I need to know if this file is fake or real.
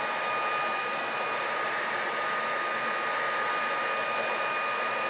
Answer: real